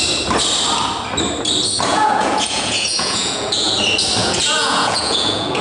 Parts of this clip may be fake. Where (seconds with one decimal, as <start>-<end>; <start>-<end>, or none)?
1.9-3.8; 4.2-5.6